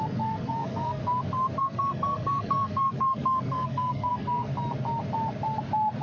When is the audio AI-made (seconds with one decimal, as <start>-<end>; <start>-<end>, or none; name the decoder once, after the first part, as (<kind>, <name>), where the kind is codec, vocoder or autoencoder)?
0.0-1.0 (codec, SNAC); 1.6-4.5